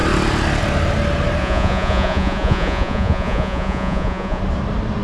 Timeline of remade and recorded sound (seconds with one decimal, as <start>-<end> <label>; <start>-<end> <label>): 0.0-1.4 recorded; 1.4-4.4 remade; 4.4-5.0 recorded